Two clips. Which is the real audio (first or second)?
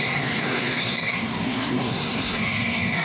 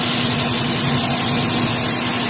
second